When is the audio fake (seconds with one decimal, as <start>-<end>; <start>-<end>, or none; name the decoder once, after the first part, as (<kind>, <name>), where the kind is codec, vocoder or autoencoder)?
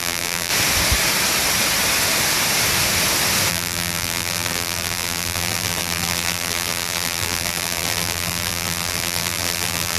0.0-0.5 (vocoder, BigVGAN v2); 3.5-10.0